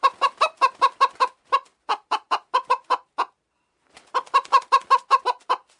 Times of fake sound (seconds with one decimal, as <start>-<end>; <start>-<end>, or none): none